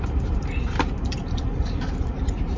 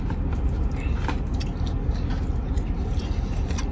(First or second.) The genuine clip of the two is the second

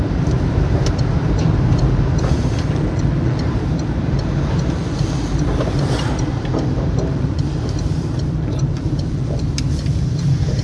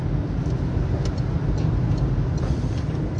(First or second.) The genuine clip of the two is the second